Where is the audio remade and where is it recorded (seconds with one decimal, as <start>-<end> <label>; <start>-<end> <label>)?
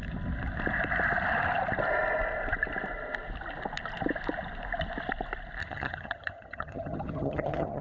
0.0-5.6 recorded; 5.6-7.8 remade